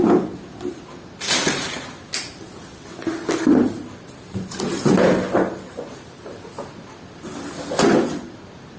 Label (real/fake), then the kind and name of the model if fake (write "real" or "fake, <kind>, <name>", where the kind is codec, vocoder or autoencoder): real